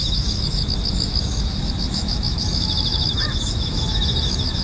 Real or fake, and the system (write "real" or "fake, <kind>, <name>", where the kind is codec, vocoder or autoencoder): fake, autoencoder, DAC-VAE